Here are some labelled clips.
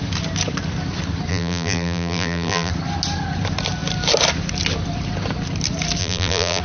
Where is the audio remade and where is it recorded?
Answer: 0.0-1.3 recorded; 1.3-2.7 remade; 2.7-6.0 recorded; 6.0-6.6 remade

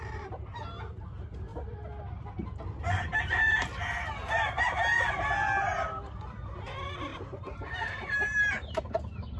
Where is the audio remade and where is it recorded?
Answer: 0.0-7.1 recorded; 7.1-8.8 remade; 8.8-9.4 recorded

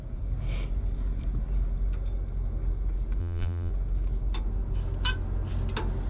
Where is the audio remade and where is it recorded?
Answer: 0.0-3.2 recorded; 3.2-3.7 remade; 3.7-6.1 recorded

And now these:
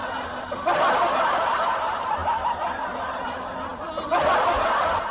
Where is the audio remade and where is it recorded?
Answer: 0.0-1.2 recorded; 1.2-2.2 remade; 2.2-2.8 recorded; 2.8-3.7 remade; 3.7-5.1 recorded

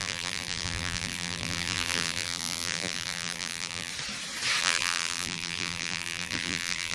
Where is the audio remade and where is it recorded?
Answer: 0.0-3.9 remade; 3.9-4.6 recorded; 4.6-6.9 remade

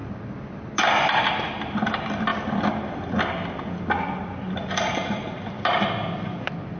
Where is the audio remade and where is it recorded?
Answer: 0.0-6.8 recorded

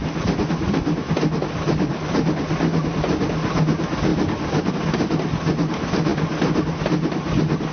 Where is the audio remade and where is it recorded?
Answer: 0.0-7.7 recorded

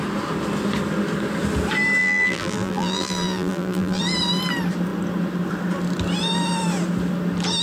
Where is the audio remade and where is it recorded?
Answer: 0.0-2.0 recorded; 2.0-4.0 remade; 4.0-7.6 recorded